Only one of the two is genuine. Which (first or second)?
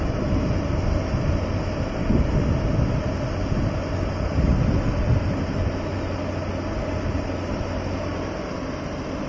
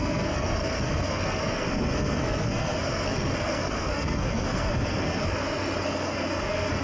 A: first